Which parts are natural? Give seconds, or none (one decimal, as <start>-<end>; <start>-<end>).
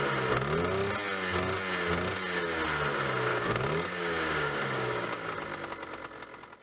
0.0-3.3; 5.3-6.6